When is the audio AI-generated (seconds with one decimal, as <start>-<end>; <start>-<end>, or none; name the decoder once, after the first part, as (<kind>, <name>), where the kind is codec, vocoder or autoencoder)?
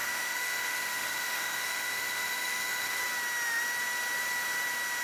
0.0-3.0 (autoencoder, DAC-VAE)